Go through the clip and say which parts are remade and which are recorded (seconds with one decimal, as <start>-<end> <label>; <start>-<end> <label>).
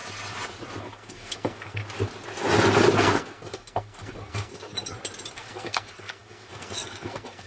0.0-0.8 recorded; 0.8-1.8 remade; 1.8-3.0 recorded; 3.0-4.7 remade; 4.7-5.3 recorded; 5.3-7.5 remade